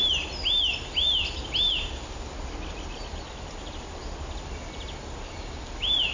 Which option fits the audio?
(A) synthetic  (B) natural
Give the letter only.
B